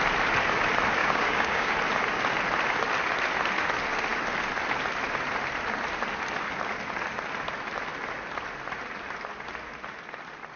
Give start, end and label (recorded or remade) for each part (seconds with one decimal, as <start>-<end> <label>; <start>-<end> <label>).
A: 0.0-1.0 recorded; 1.0-1.7 remade; 1.7-10.6 recorded